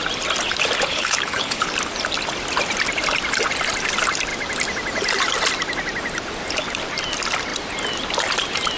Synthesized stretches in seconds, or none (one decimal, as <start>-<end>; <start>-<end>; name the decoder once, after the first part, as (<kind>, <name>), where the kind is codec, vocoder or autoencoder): 0.9-1.7 (codec, HILCodec)